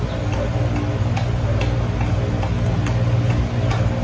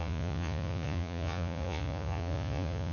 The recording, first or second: first